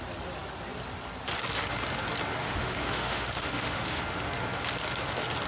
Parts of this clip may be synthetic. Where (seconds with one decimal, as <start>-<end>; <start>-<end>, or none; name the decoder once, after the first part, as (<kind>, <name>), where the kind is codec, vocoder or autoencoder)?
2.4-4.0 (autoencoder, DAC-VAE)